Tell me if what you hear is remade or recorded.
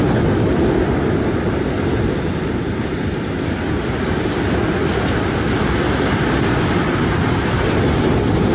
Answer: recorded